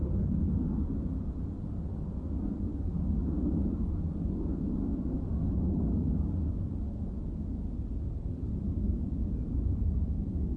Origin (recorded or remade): recorded